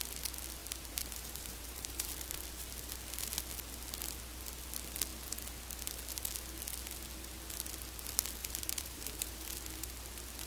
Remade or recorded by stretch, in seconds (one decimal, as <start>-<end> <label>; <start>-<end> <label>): 0.0-0.6 recorded; 0.6-2.1 remade; 2.1-8.4 recorded; 8.4-9.5 remade; 9.5-10.5 recorded